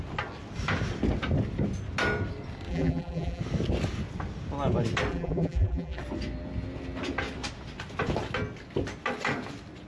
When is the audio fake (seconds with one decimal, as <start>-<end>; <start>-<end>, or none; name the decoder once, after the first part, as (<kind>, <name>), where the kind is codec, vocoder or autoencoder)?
2.7-3.4 (vocoder, BigVGAN v2); 5.1-6.0